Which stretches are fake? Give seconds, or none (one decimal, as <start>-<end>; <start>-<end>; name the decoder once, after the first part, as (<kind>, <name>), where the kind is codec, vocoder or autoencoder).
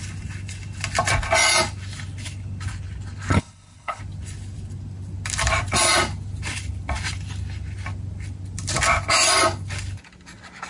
3.3-4.0 (codec, HILCodec)